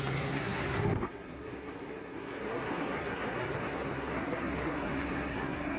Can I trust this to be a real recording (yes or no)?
no